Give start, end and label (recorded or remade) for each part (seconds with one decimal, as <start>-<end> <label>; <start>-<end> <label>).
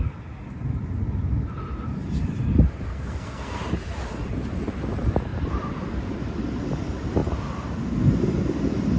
0.0-2.9 recorded; 2.9-3.6 remade; 3.6-9.0 recorded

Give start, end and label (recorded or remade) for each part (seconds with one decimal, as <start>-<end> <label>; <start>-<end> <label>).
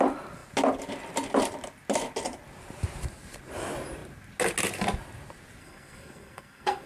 0.0-5.6 recorded; 5.6-6.9 remade